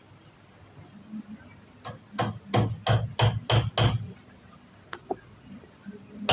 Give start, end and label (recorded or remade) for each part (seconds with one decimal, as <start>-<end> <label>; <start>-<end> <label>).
0.0-5.0 recorded; 5.0-5.5 remade; 5.5-6.3 recorded

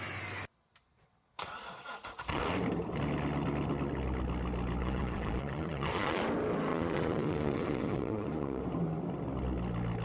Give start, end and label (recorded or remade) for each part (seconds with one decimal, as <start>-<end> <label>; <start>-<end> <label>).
0.0-0.9 recorded; 0.9-2.4 remade; 2.4-4.8 recorded; 4.8-6.2 remade; 6.2-6.7 recorded; 6.7-8.6 remade; 8.6-10.0 recorded

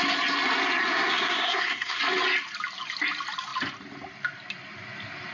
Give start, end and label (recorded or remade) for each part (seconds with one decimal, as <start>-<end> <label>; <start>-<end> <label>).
0.0-0.9 recorded; 0.9-2.0 remade; 2.0-5.3 recorded

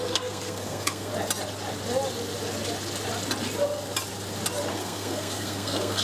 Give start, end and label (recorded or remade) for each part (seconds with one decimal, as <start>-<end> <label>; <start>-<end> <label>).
0.0-1.1 remade; 1.1-4.7 recorded; 4.7-6.0 remade

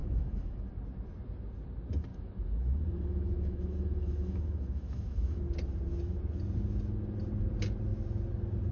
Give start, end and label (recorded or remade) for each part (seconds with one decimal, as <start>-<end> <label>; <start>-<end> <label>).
0.0-0.7 remade; 0.7-2.1 recorded; 2.1-5.4 remade; 5.4-8.7 recorded

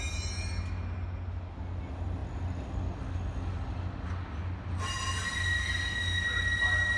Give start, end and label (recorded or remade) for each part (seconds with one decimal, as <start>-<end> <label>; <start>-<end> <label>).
0.0-7.0 recorded

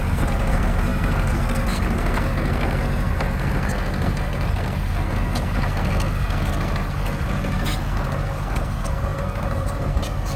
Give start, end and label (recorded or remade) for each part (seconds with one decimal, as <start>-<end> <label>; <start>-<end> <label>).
0.0-10.4 remade